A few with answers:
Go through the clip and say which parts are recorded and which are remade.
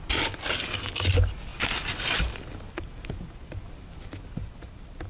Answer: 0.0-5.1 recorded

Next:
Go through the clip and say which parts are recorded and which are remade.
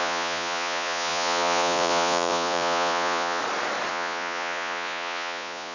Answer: 0.0-3.4 remade; 3.4-3.9 recorded; 3.9-5.7 remade